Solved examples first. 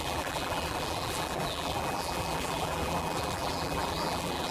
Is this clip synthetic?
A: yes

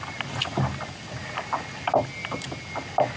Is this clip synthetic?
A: no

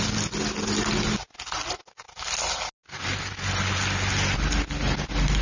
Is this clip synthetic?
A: no